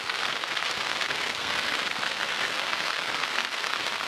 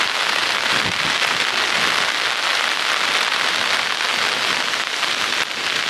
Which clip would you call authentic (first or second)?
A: second